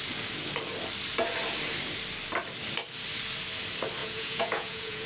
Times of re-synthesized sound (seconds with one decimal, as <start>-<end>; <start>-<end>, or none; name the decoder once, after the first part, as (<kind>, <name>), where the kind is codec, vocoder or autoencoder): 4.0-5.1 (vocoder, Vocos)